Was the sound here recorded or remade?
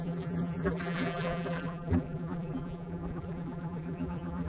remade